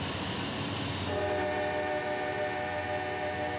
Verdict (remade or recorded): recorded